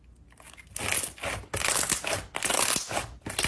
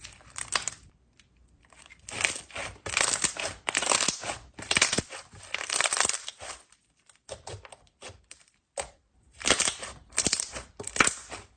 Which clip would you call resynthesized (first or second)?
second